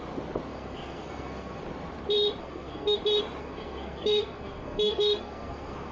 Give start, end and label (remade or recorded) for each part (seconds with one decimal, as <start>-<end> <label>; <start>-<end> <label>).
0.0-0.5 recorded; 0.5-1.6 remade; 1.6-2.4 recorded; 2.4-3.0 remade; 3.0-3.4 recorded; 3.4-5.9 remade